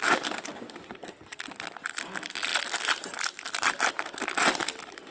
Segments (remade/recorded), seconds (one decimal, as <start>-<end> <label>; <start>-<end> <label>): 0.0-5.1 recorded